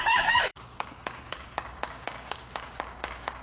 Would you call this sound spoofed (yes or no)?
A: yes